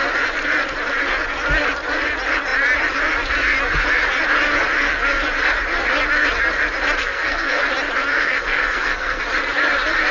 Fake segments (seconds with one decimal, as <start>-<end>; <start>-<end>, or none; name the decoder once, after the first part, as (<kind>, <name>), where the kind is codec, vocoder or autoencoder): 7.0-7.6 (codec, SNAC); 8.1-9.2